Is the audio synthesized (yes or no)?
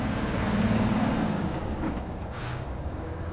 yes